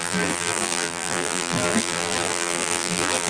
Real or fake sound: fake